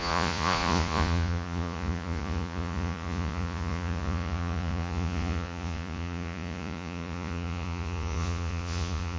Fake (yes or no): yes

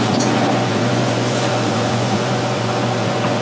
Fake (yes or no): yes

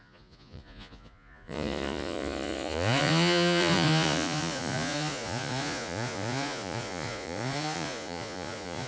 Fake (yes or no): yes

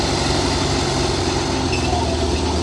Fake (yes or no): no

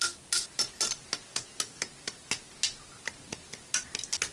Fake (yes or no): no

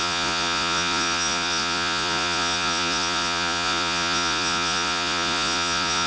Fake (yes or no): yes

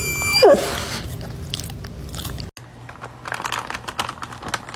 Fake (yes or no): no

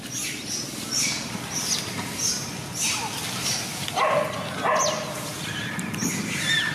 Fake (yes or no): no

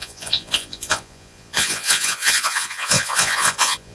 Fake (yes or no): yes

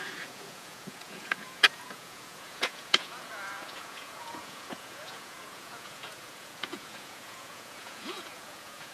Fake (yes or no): yes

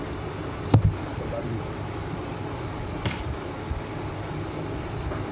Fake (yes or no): no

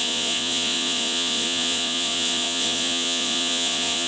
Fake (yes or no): yes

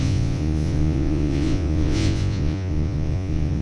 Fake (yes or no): yes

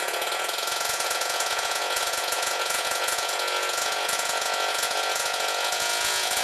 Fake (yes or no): yes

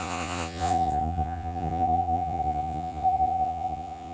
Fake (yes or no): yes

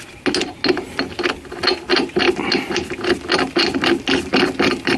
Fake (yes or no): no